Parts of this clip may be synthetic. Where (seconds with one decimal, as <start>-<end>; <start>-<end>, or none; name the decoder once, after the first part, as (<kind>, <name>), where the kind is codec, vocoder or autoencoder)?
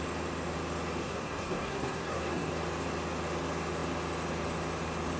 1.0-2.5 (codec, SNAC)